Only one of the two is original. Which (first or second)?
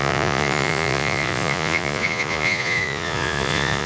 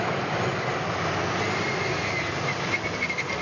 second